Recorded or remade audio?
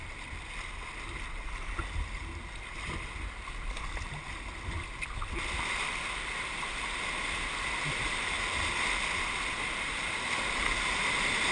recorded